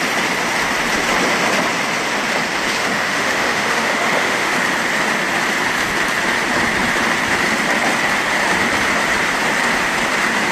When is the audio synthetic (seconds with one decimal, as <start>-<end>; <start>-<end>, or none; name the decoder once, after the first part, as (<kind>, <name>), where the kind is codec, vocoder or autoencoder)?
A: 2.8-4.5 (autoencoder, DAC-VAE)